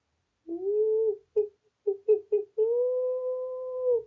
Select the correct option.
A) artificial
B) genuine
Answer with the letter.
B